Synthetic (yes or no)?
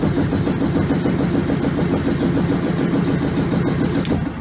no